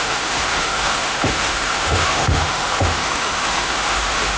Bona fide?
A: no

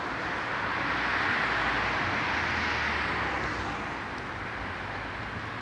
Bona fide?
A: yes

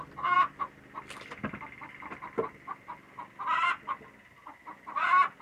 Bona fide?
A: yes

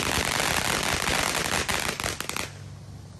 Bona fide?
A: yes